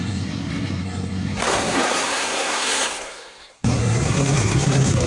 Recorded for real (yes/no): no